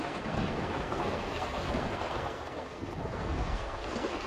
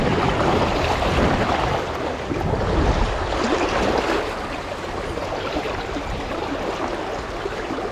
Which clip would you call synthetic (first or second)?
first